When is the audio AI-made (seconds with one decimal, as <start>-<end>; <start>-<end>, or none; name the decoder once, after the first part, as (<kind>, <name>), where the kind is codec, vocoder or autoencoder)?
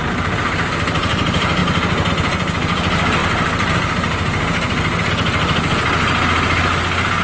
none